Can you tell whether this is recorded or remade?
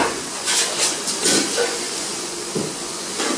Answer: remade